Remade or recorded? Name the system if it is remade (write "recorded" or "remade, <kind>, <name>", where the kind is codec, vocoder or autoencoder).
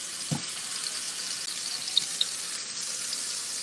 recorded